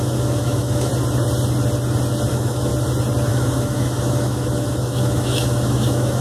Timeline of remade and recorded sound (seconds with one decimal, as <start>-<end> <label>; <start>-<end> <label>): 0.0-0.9 remade; 0.9-2.3 recorded; 2.3-2.7 remade; 2.7-3.3 recorded; 3.3-6.2 remade